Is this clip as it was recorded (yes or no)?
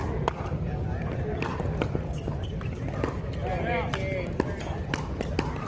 yes